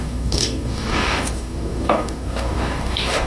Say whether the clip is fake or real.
fake